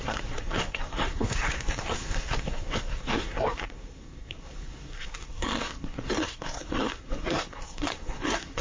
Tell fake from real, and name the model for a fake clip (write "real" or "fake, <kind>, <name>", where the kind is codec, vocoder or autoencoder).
fake, codec, SNAC